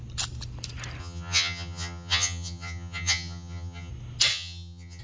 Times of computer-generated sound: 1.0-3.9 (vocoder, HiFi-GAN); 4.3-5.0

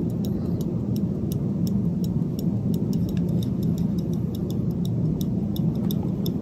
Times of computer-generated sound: 1.9-3.3 (vocoder, BigVGAN v2); 4.4-5.8

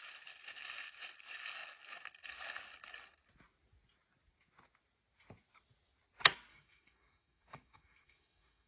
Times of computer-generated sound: 6.5-8.7 (codec, DAC)